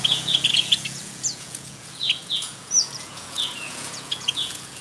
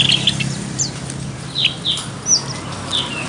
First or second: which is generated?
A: first